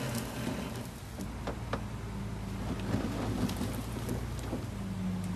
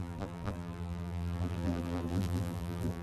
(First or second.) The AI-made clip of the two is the second